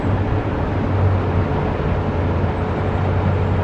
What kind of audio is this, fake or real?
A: real